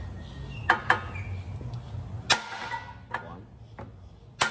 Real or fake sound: real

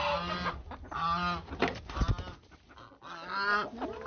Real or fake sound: real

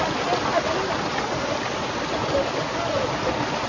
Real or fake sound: real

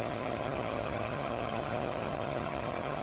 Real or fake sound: fake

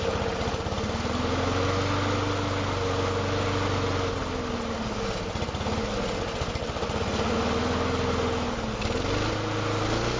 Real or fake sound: real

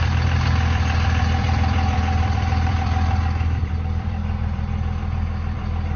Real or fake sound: fake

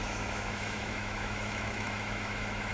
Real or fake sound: fake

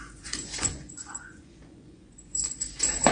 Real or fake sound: fake